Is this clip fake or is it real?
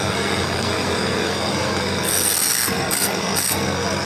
fake